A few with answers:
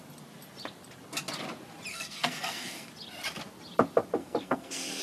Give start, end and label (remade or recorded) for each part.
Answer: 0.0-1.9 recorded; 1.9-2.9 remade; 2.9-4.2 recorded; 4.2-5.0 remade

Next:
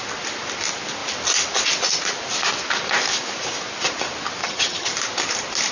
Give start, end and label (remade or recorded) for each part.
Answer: 0.0-4.4 recorded; 4.4-4.9 remade; 4.9-5.7 recorded

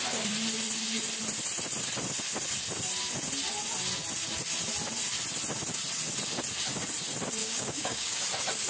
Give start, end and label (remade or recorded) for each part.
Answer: 0.0-7.4 recorded; 7.4-8.2 remade; 8.2-8.7 recorded